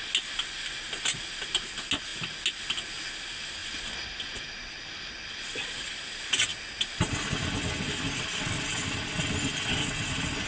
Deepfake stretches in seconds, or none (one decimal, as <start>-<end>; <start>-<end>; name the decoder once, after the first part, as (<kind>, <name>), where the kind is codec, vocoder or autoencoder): none